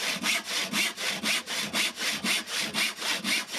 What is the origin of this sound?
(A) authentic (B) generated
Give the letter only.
A